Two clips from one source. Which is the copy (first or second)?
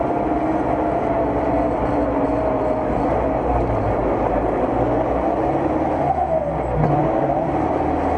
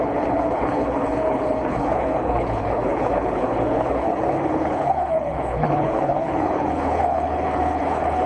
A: second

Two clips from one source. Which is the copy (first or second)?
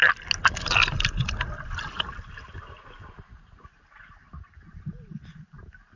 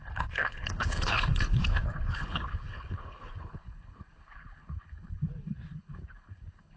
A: second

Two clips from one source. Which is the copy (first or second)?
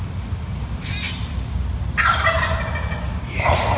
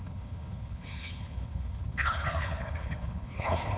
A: second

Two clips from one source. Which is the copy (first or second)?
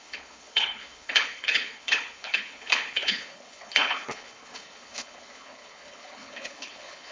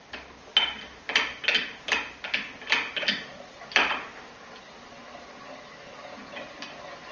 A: first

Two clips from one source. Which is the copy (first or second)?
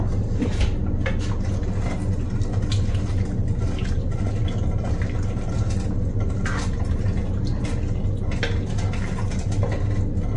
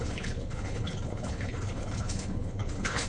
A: second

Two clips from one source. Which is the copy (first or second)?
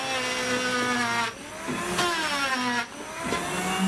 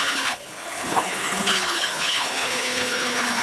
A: second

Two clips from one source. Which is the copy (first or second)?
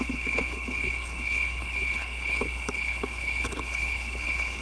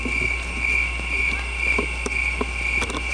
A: first